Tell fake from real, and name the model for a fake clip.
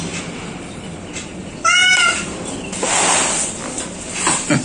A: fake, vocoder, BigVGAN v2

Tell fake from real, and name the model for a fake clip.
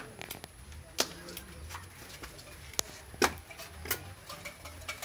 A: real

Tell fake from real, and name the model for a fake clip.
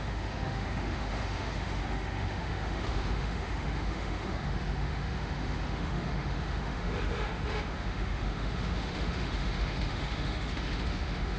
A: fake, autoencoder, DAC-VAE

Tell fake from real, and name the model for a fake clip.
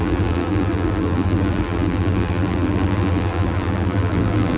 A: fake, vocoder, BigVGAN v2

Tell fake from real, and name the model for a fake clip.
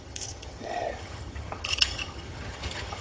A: fake, vocoder, HiFi-GAN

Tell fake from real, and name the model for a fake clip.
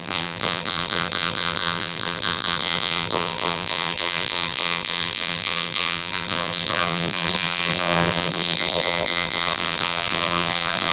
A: fake, vocoder, BigVGAN v2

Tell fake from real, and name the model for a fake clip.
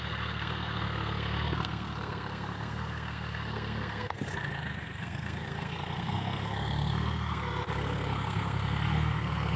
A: fake, codec, SNAC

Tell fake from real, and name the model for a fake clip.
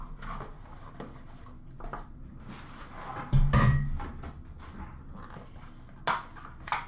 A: real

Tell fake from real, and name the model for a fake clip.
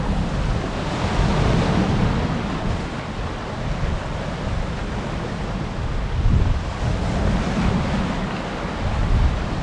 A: real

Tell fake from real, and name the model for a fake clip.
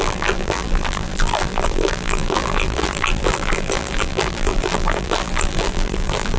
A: fake, vocoder, BigVGAN v2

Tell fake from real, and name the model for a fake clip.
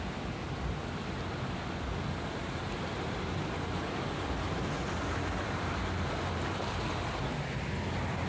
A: real